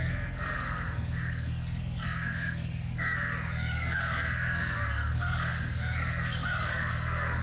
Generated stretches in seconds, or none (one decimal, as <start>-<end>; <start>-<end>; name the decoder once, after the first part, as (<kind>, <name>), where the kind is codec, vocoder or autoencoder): 0.0-7.4 (codec, SNAC)